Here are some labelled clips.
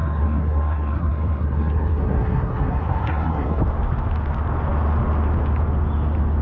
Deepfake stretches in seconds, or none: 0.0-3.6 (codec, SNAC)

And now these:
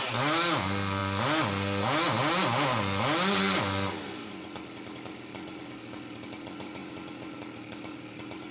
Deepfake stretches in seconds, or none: none